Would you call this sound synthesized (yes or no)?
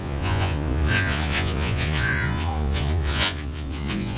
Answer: yes